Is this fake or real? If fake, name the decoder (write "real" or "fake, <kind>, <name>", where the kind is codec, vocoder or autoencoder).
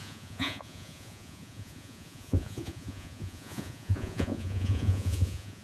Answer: fake, vocoder, Vocos